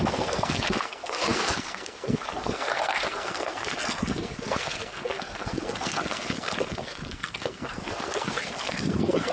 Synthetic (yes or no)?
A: yes